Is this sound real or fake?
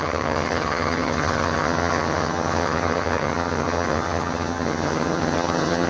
fake